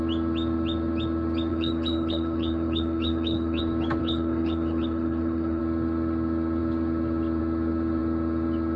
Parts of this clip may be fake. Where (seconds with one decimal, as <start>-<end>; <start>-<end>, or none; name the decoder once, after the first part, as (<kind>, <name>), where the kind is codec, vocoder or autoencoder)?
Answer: 1.5-3.6 (codec, HILCodec); 4.0-5.6